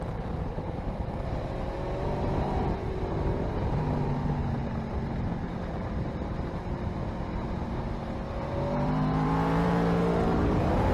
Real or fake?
fake